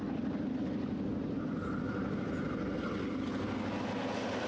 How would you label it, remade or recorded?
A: recorded